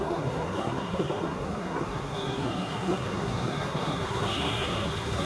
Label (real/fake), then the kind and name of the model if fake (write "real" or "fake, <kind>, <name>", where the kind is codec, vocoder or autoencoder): fake, codec, SNAC